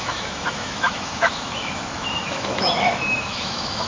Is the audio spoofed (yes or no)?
yes